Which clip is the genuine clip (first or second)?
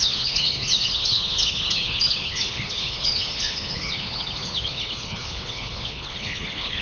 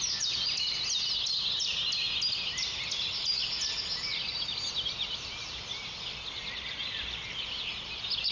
second